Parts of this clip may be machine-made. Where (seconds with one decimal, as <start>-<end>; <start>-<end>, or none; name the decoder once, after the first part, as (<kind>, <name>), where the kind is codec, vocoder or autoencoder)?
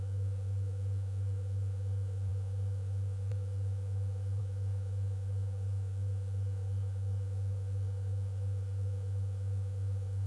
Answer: 0.0-10.3 (autoencoder, DAC-VAE)